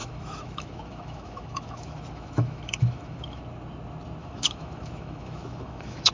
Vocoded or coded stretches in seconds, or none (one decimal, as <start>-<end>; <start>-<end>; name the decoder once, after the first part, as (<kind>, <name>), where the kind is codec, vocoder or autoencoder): 0.0-3.4 (autoencoder, DAC-VAE); 4.2-6.1